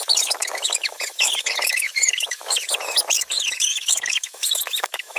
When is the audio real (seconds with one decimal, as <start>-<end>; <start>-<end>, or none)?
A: none